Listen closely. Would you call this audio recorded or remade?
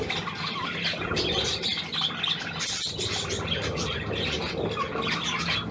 recorded